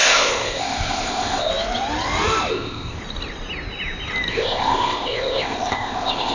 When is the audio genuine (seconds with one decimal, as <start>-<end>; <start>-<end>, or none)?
1.5-2.5; 3.0-4.3